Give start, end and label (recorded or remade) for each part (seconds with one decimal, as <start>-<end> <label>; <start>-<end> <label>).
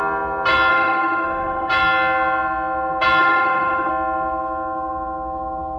0.0-0.7 recorded; 0.7-1.7 remade; 1.7-3.2 recorded; 3.2-3.9 remade; 3.9-5.8 recorded